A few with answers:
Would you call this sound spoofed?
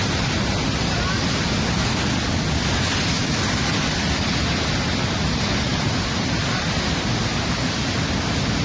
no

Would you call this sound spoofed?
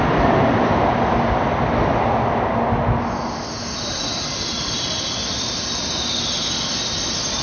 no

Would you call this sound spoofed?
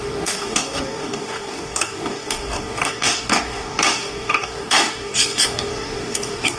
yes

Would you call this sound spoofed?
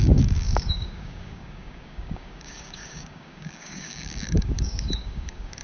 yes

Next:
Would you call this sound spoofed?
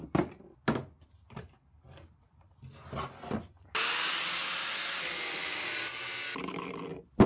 no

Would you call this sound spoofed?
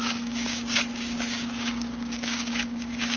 yes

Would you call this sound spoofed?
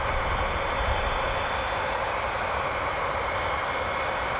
no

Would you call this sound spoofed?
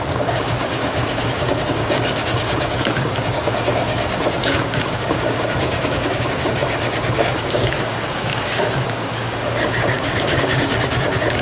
yes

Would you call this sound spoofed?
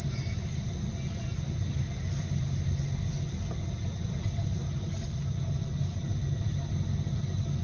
no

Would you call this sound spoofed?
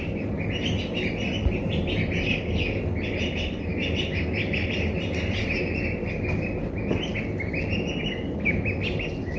no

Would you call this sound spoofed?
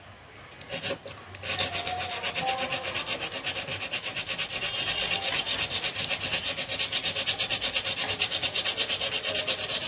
no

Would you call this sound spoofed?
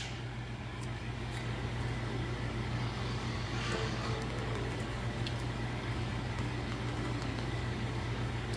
yes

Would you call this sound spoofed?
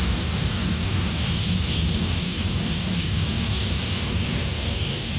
yes